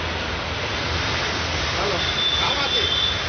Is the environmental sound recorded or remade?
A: recorded